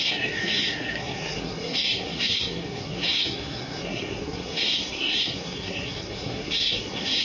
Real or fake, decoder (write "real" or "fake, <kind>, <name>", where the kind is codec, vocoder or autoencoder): fake, codec, SNAC